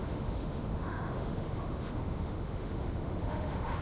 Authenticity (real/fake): fake